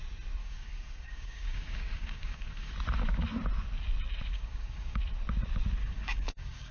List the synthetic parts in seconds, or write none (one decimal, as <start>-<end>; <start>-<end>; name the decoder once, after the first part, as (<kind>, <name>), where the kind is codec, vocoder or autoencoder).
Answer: 0.4-2.7 (codec, DAC); 4.3-5.0; 5.8-6.7